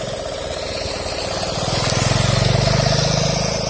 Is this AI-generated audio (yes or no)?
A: no